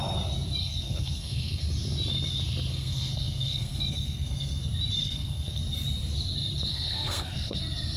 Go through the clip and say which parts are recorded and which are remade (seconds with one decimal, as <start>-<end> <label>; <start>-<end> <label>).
0.0-0.6 recorded; 0.6-1.6 remade; 1.6-2.7 recorded; 2.7-4.6 remade; 4.6-5.0 recorded; 5.0-5.6 remade; 5.6-6.7 recorded; 6.7-7.6 remade; 7.6-8.0 recorded